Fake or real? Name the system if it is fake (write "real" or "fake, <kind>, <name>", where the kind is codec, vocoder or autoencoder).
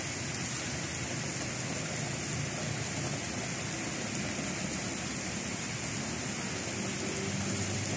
real